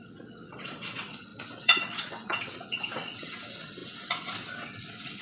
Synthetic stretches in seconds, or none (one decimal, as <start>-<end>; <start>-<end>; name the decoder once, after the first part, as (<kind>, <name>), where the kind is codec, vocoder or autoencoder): 0.0-5.2 (vocoder, WaveNeXt)